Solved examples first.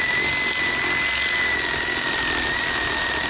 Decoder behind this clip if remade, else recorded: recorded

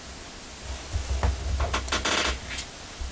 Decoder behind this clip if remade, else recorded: recorded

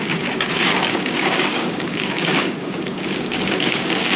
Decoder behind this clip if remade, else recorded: remade, codec, DAC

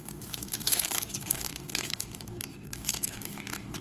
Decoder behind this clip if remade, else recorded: remade, codec, DAC